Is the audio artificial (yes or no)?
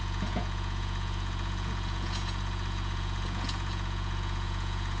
yes